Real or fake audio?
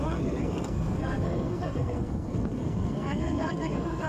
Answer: fake